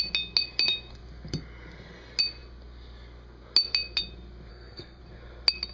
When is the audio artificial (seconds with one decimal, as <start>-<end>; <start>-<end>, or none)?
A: 4.5-5.0